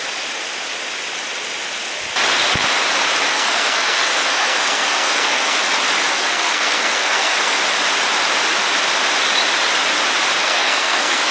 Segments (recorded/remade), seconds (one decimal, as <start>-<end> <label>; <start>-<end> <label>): 0.0-3.3 recorded; 3.3-5.6 remade; 5.6-6.1 recorded; 6.1-7.6 remade; 7.6-10.4 recorded; 10.4-11.3 remade